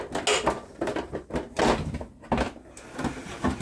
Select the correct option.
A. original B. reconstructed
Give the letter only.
A